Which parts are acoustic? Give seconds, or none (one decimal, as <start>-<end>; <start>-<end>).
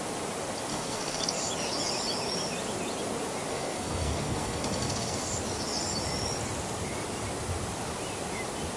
0.0-0.7; 1.2-3.5; 5.3-8.8